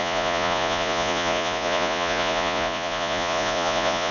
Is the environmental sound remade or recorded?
remade